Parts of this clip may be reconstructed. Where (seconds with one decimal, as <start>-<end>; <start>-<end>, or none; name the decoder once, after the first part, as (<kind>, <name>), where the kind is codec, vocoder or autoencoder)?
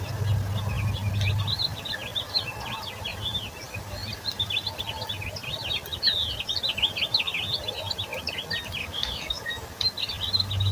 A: 8.8-9.5 (codec, DAC)